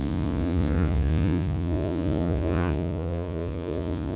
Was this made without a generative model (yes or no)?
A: no